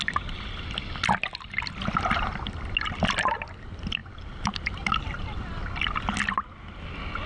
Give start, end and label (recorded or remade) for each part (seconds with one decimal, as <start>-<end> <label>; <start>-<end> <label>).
0.0-4.0 recorded; 4.0-5.7 remade; 5.7-7.3 recorded